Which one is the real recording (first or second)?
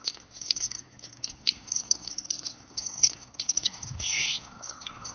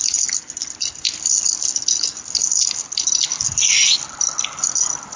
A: second